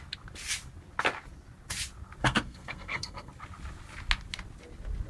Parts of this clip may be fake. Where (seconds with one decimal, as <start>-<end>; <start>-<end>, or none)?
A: 2.2-3.3